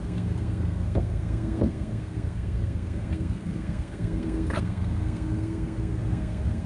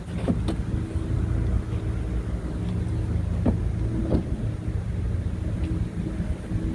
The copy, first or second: first